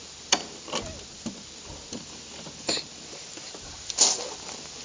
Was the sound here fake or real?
real